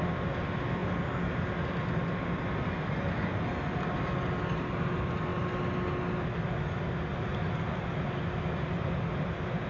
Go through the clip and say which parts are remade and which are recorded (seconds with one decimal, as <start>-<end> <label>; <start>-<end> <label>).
0.0-9.7 recorded